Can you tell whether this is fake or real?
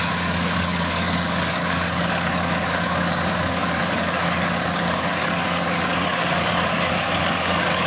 fake